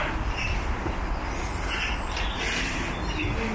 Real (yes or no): yes